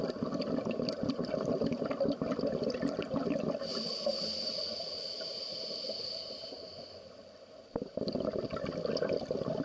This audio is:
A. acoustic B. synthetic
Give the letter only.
A